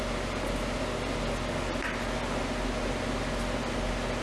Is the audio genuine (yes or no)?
yes